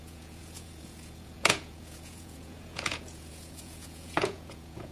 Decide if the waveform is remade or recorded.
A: remade